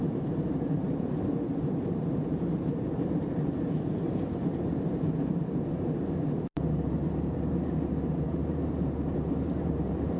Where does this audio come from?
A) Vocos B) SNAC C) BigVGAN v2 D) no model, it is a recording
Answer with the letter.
C